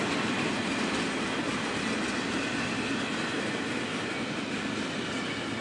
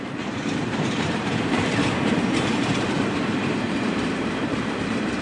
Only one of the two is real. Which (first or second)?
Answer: first